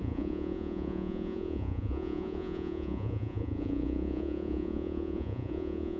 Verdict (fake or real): fake